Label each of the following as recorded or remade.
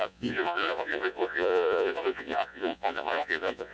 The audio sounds remade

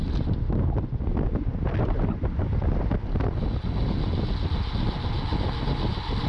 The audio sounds recorded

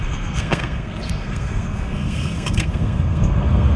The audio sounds remade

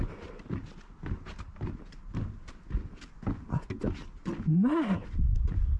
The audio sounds recorded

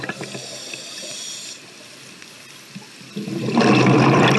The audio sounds recorded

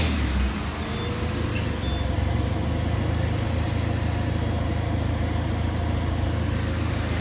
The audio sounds recorded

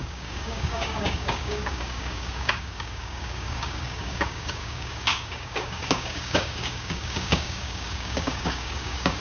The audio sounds remade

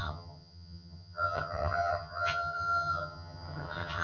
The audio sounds remade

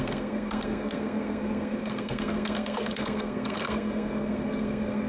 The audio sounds remade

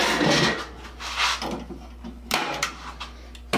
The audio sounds recorded